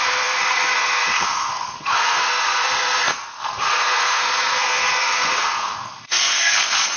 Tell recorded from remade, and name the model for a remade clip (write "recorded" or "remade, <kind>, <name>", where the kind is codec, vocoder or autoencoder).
remade, codec, SNAC